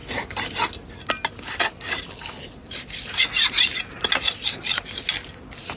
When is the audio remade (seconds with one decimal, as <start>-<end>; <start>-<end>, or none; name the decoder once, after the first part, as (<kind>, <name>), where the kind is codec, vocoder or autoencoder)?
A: none

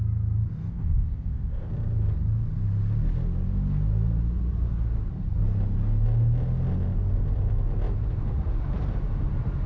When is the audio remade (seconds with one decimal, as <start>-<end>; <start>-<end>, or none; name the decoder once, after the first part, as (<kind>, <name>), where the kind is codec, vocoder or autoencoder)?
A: 0.7-1.7 (codec, ZipCodec)

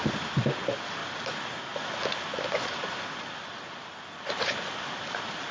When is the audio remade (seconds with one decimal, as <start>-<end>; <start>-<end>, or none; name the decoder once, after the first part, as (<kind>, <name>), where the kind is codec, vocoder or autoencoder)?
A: none